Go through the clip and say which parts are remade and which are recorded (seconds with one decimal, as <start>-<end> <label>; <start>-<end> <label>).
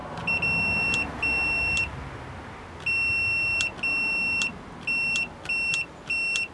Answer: 0.0-6.5 recorded